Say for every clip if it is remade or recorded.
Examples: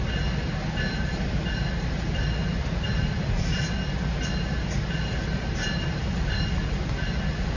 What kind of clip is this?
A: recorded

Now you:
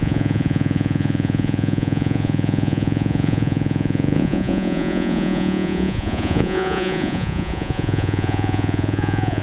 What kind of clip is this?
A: remade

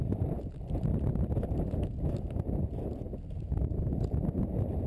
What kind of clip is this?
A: recorded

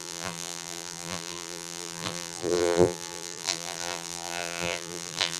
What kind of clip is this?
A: remade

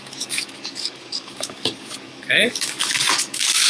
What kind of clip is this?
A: remade